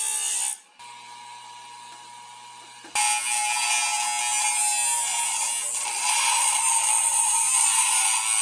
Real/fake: real